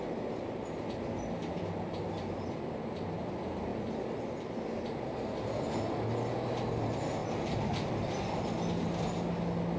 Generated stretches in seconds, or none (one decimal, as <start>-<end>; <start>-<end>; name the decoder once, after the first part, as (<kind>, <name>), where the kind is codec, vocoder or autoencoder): none